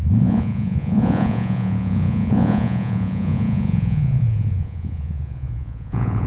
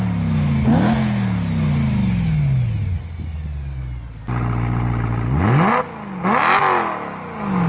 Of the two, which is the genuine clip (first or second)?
second